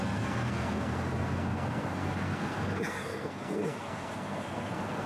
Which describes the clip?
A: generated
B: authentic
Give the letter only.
A